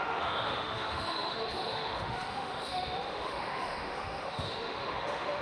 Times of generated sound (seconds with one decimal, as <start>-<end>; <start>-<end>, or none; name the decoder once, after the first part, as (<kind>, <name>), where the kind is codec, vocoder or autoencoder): 0.0-5.4 (autoencoder, DAC-VAE)